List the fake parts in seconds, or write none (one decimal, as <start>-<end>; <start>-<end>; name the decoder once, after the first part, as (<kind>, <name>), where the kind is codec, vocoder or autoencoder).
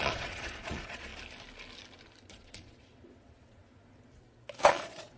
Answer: 0.0-1.1 (vocoder, Vocos); 2.3-3.6; 4.7-5.2